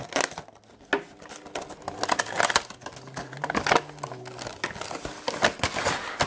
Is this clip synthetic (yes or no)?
no